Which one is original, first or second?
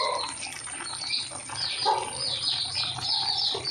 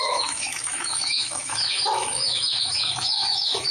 first